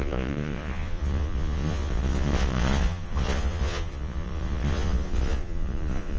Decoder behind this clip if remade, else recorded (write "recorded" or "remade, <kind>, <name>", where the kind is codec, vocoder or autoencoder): remade, vocoder, Vocos